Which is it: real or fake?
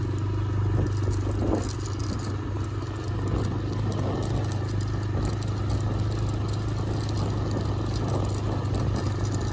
real